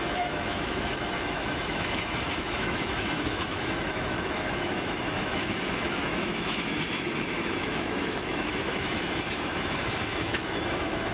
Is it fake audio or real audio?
fake